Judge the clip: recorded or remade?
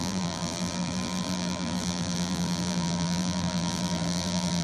remade